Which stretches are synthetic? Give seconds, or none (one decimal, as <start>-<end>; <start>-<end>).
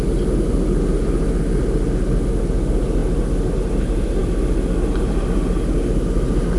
none